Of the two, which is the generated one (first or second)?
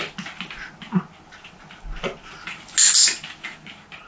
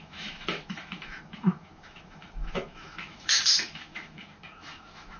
second